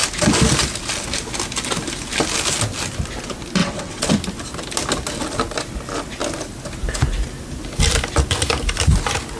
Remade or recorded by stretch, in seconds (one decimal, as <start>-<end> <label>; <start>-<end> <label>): 0.0-3.6 recorded; 3.6-4.1 remade; 4.1-9.4 recorded